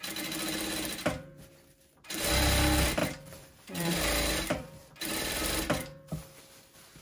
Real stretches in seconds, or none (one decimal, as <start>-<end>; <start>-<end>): 0.0-3.0; 6.4-7.0